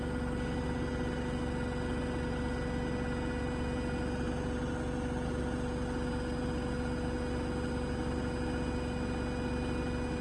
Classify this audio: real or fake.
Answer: real